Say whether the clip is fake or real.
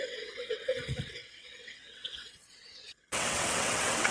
fake